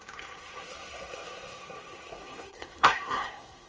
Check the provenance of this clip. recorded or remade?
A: remade